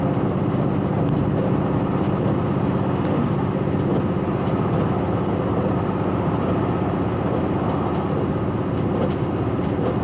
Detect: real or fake real